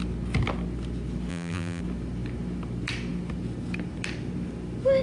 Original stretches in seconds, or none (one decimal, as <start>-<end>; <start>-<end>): 0.0-1.3; 1.8-5.0